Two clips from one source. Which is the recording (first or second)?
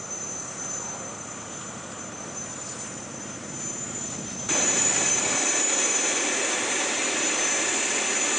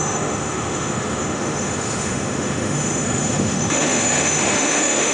first